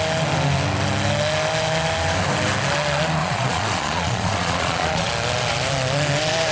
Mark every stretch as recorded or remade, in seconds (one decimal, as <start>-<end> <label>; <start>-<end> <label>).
0.0-3.2 recorded; 3.2-5.1 remade; 5.1-6.5 recorded